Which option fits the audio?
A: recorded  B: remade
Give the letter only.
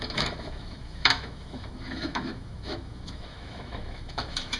B